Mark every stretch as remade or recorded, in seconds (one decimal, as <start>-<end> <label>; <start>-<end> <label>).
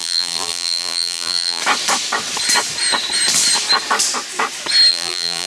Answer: 0.0-1.6 remade; 1.6-4.9 recorded; 4.9-5.5 remade